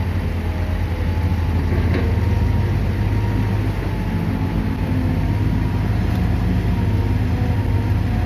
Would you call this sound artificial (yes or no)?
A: no